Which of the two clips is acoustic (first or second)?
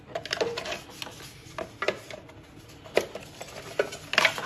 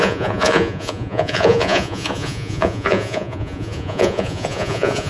first